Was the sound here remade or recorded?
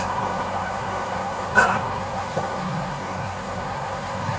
remade